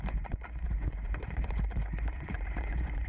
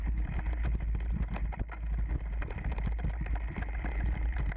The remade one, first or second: first